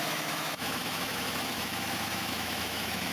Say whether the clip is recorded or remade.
remade